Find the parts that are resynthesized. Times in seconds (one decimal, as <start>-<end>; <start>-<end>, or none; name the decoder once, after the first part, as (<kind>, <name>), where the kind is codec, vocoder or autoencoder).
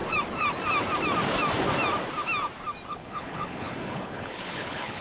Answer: 2.9-5.0 (codec, HILCodec)